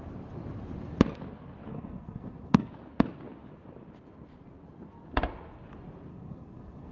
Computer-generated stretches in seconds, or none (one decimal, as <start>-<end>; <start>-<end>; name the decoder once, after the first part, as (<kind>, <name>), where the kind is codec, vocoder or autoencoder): 1.7-2.7 (codec, SNAC); 6.1-6.9